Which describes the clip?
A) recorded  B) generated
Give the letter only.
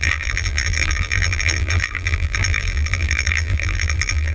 B